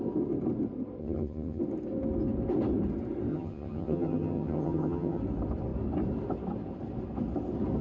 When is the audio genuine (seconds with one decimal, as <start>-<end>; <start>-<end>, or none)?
0.0-1.0; 1.6-3.3; 5.2-7.8